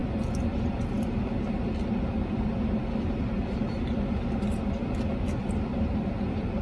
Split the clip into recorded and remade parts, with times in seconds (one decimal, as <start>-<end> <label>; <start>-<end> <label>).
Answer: 0.0-6.6 recorded